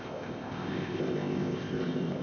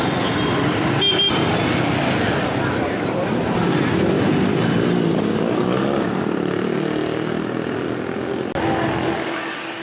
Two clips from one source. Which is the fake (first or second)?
first